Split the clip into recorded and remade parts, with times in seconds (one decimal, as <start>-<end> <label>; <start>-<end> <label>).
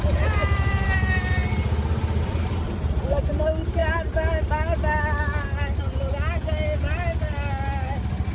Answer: 0.0-1.4 remade; 1.4-2.4 recorded; 2.4-3.8 remade; 3.8-5.2 recorded; 5.2-5.8 remade; 5.8-8.3 recorded